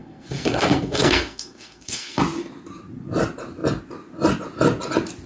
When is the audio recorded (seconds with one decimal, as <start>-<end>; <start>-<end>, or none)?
2.2-5.3